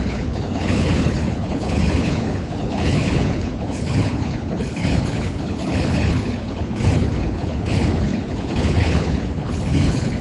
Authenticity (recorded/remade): remade